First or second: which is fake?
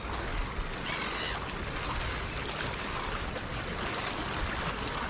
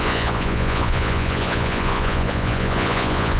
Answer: second